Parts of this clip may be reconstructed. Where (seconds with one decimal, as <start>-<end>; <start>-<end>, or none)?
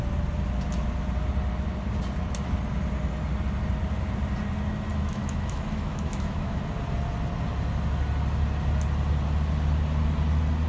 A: 4.9-6.6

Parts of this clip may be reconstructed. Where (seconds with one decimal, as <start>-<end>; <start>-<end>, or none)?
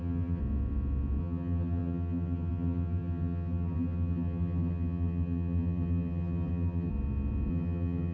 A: 0.0-0.4; 1.2-6.9; 7.5-8.1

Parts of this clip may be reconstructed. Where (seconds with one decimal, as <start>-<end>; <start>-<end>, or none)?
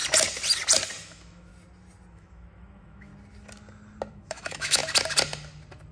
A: 1.0-1.5; 2.1-3.1; 4.1-4.8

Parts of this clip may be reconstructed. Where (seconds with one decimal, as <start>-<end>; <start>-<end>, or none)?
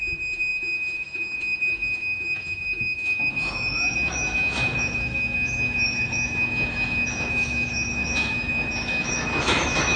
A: 0.0-10.0